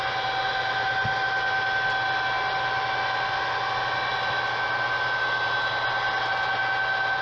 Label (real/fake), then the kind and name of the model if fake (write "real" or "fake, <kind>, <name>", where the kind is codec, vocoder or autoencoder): real